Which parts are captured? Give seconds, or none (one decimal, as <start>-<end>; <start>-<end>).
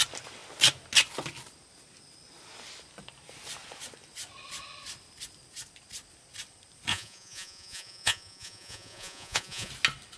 0.0-6.9; 9.7-10.2